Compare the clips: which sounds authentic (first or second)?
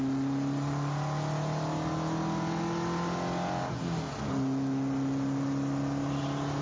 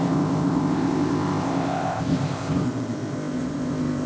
first